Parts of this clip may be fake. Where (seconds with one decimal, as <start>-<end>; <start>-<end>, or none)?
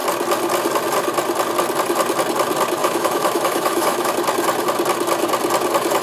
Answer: 2.8-4.1